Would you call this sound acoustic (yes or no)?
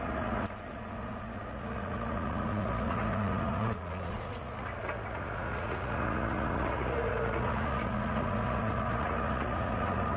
no